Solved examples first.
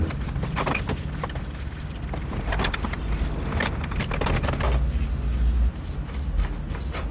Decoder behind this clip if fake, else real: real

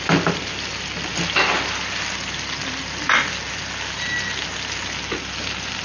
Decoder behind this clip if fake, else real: real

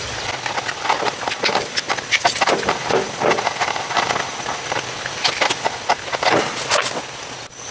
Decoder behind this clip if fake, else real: real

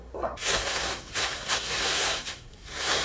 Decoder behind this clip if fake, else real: fake, codec, SNAC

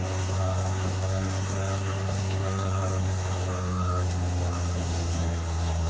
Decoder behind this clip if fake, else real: fake, codec, SNAC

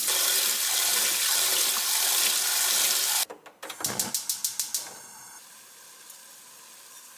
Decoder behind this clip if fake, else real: real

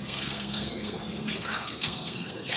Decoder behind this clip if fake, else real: fake, codec, SNAC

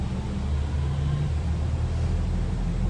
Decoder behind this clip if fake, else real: real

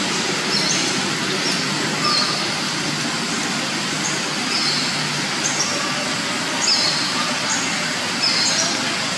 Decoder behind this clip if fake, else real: real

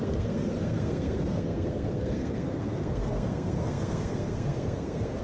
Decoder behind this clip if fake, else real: fake, codec, SNAC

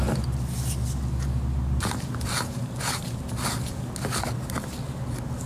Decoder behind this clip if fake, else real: real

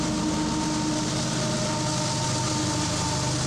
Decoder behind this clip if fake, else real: real